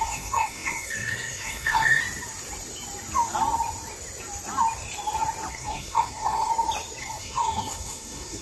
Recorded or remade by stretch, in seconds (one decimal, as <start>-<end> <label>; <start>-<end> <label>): 0.0-2.0 remade; 2.0-5.5 recorded; 5.5-6.5 remade; 6.5-7.0 recorded; 7.0-8.4 remade